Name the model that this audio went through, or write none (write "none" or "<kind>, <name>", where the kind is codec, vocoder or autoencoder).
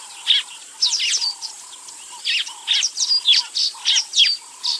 none